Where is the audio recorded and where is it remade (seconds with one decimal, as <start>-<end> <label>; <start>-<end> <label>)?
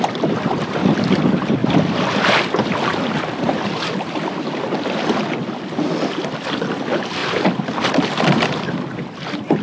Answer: 0.0-1.6 remade; 1.6-2.1 recorded; 2.1-2.9 remade; 2.9-5.4 recorded; 5.4-9.6 remade